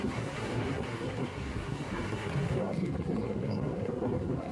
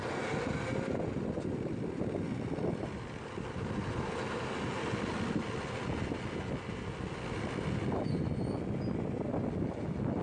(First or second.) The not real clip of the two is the first